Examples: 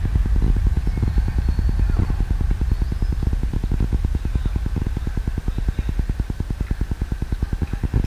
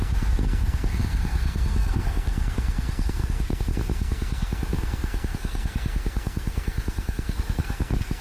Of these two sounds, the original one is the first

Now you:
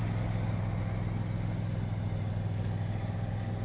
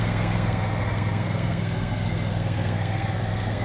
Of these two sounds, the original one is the first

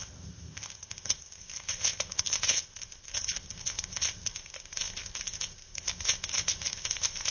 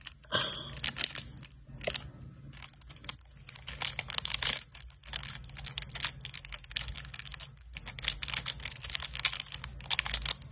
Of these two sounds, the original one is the second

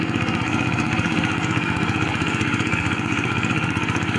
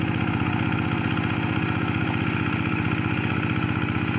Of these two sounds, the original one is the second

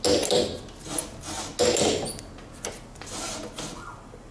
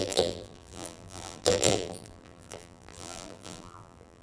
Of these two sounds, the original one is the first